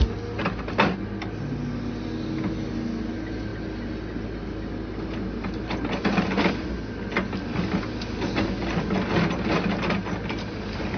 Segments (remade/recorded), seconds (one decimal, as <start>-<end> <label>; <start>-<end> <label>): 0.0-11.0 recorded